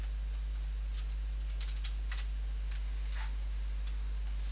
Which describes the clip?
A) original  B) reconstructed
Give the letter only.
A